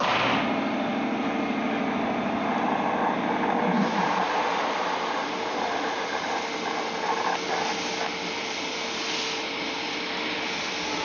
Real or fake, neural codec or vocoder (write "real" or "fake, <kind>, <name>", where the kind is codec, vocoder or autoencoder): fake, vocoder, BigVGAN v2